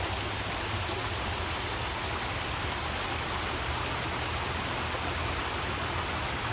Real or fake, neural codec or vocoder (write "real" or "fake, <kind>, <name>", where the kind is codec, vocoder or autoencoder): real